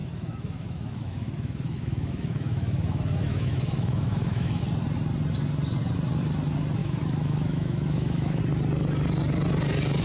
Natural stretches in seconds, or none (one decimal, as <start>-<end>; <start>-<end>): 4.6-6.8; 8.4-10.0